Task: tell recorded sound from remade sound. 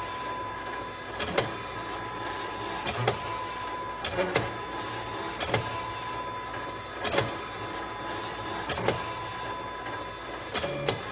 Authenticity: recorded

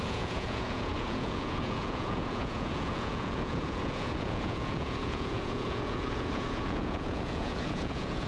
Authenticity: remade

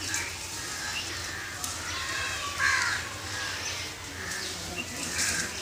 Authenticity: recorded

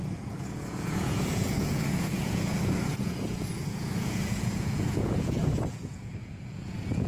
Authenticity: remade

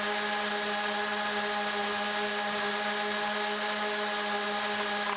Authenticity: recorded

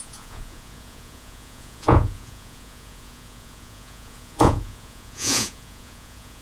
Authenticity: remade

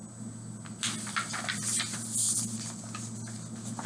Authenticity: recorded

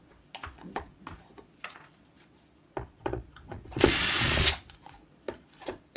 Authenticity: remade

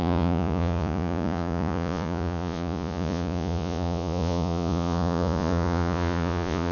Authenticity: remade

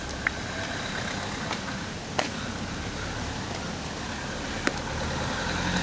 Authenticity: recorded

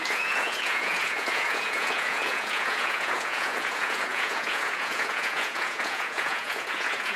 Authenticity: remade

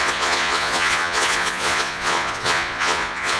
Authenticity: remade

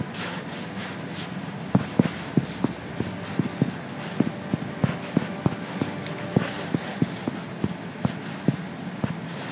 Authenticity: recorded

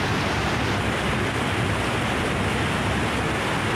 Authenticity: recorded